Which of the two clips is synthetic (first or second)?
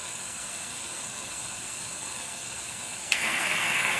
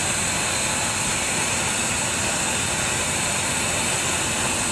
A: first